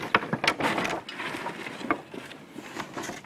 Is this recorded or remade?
recorded